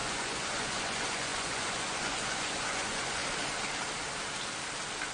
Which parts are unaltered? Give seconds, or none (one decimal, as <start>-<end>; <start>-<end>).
3.2-5.1